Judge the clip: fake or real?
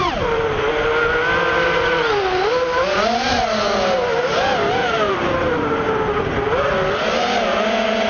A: real